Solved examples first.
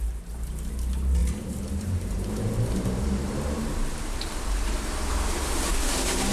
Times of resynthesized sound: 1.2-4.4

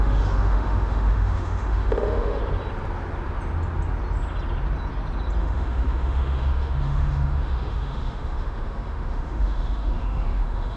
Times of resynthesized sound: 0.0-2.4; 5.4-10.8

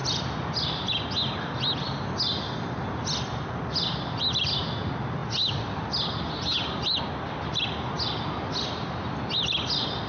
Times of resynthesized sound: none